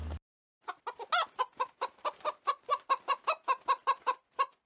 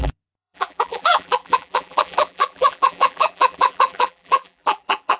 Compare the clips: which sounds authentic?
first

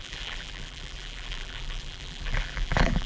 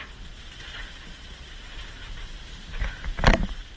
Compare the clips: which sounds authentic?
second